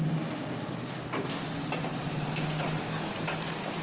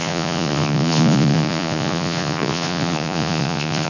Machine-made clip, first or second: second